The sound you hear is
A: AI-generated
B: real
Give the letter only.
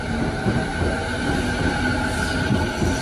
B